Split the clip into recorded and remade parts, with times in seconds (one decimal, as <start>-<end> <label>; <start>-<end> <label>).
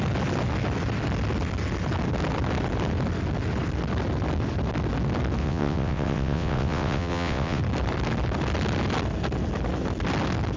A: 0.0-5.4 recorded; 5.4-7.6 remade; 7.6-10.6 recorded